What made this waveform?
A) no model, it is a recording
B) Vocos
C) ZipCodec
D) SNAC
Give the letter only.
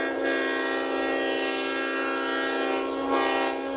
A